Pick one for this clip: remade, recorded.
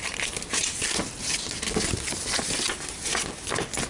recorded